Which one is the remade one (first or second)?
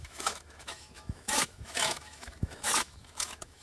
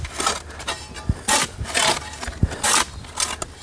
first